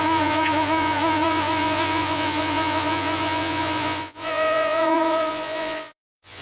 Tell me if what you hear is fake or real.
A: fake